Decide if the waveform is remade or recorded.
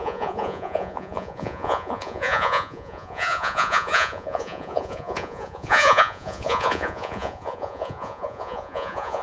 remade